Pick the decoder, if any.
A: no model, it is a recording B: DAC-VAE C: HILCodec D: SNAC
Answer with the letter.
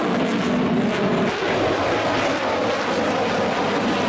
A